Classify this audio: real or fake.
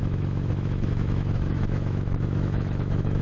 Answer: fake